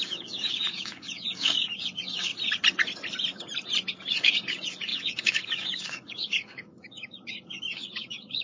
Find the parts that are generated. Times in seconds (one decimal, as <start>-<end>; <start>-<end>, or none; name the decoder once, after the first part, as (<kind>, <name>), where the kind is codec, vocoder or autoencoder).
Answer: 0.0-2.3 (codec, DAC); 4.1-8.4